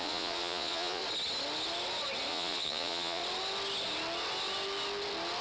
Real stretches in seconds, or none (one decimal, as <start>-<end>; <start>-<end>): 1.0-2.3; 3.2-5.4